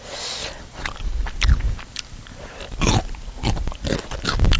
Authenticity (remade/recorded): recorded